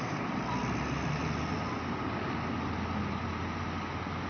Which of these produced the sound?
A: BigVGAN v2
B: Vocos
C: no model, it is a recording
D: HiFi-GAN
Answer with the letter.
C